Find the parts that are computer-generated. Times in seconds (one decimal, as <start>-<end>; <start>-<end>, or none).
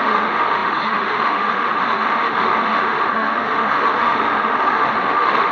0.0-5.5